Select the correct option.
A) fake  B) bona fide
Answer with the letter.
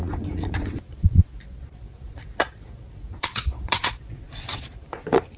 A